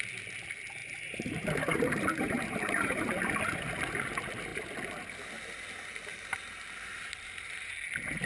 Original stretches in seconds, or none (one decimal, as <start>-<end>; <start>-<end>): 0.0-0.8; 3.3-6.1; 7.7-8.3